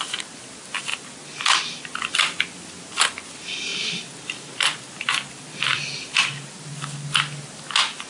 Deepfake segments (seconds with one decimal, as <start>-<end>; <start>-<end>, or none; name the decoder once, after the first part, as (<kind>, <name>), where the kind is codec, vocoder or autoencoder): 3.7-5.8 (vocoder, BigVGAN v2)